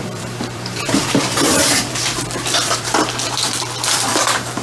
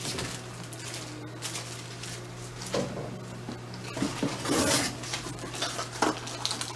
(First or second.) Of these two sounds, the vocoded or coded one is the first